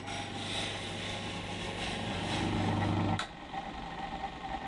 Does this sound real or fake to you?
real